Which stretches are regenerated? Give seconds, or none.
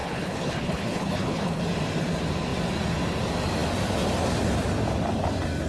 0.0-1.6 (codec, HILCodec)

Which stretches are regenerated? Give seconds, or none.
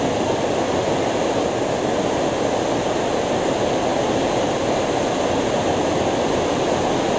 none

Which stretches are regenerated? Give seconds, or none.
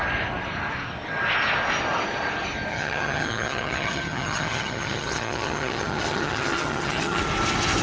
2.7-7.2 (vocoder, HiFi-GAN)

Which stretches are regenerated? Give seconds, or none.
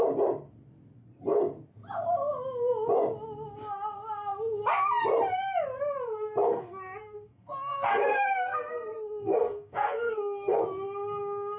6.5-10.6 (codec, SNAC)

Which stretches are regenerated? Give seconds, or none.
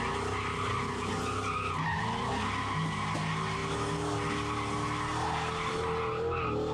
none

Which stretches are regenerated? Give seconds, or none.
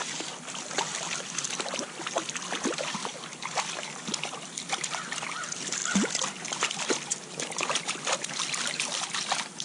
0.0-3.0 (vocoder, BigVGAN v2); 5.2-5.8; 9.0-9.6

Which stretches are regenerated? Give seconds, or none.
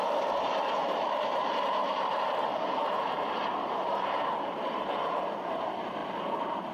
0.8-4.8 (vocoder, BigVGAN v2)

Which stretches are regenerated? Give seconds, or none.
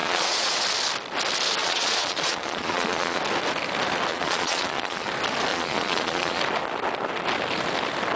0.0-0.6 (vocoder, Vocos); 1.6-3.2; 4.1-5.1; 5.5-6.4